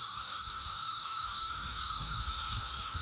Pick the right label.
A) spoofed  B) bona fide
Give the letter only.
A